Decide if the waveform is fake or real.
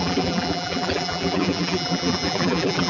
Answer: fake